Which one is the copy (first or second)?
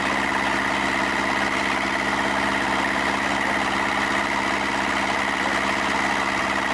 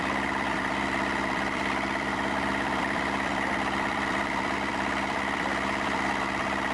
second